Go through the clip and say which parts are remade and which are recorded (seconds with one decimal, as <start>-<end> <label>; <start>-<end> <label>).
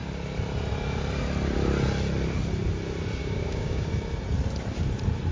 0.0-3.2 recorded; 3.2-3.9 remade; 3.9-5.3 recorded